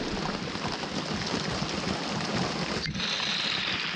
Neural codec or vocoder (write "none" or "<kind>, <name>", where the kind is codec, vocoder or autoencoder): none